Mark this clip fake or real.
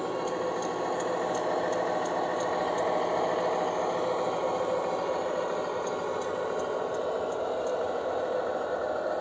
real